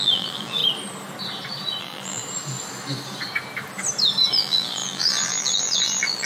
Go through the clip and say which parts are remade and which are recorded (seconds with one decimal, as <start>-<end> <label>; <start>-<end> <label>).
0.0-0.6 remade; 0.6-1.8 recorded; 1.8-2.2 remade; 2.2-4.3 recorded; 4.3-6.2 remade